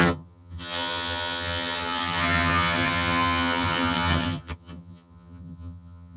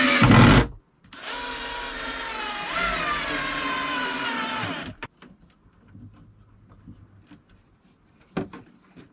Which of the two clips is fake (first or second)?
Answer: first